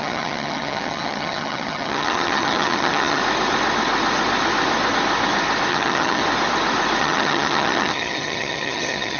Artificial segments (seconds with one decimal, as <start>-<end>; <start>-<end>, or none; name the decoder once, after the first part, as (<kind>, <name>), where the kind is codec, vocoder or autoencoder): 0.0-3.2 (vocoder, HiFi-GAN); 5.7-6.2; 7.0-9.2